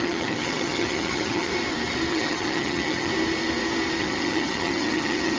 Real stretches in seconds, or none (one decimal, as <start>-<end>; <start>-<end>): 1.5-2.1; 3.1-4.0